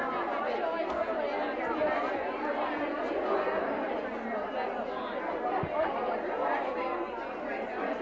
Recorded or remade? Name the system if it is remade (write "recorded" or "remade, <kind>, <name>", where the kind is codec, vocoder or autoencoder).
recorded